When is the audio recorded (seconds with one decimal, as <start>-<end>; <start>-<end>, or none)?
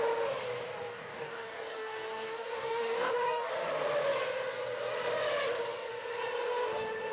0.0-0.9; 3.5-7.1